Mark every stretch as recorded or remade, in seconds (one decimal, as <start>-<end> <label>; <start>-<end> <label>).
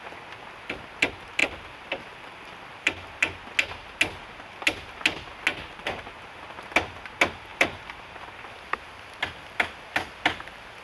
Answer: 0.0-1.4 recorded; 1.4-3.3 remade; 3.3-7.5 recorded; 7.5-8.7 remade; 8.7-10.8 recorded